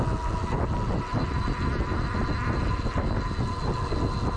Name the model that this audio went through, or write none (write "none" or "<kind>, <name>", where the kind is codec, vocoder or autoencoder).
none